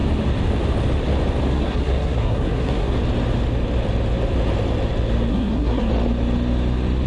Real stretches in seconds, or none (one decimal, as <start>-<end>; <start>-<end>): 0.0-1.5; 2.9-5.3; 5.9-7.1